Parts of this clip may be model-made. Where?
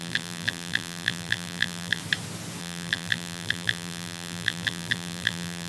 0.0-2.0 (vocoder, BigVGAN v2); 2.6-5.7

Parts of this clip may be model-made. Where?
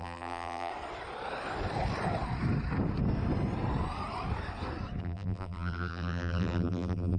0.0-0.7 (vocoder, BigVGAN v2); 5.0-7.2